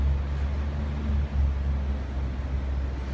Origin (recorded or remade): recorded